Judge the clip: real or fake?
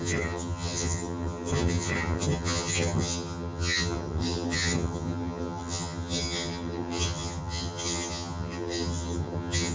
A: fake